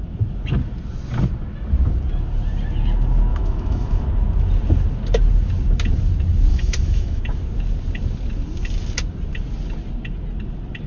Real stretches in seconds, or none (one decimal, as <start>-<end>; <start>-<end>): 0.0-3.3; 4.0-6.5; 7.2-10.9